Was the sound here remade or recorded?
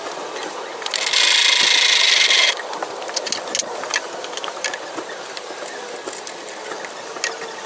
recorded